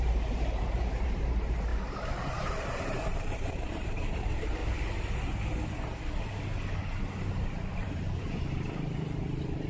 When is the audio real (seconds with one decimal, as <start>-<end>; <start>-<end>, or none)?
1.7-2.3; 4.6-7.7